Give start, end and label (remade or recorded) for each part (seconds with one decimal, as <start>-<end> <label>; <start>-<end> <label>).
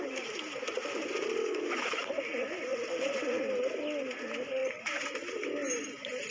0.0-1.4 recorded; 1.4-2.0 remade; 2.0-6.3 recorded